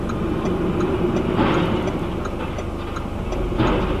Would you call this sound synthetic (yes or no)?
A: no